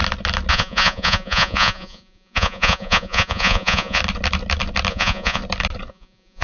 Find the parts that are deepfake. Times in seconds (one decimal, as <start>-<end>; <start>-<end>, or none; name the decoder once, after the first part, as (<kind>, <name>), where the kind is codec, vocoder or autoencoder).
0.5-4.0 (vocoder, Vocos); 4.9-5.4; 5.9-6.4

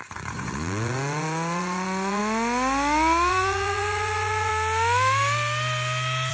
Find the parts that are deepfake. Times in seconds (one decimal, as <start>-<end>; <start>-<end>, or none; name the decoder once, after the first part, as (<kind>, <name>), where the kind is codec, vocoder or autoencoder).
0.0-2.2 (vocoder, Vocos); 3.3-4.5